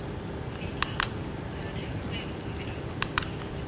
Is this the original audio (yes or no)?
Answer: yes